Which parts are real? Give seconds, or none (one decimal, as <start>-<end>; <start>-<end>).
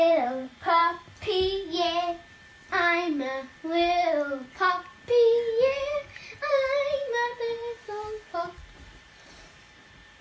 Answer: 0.8-5.8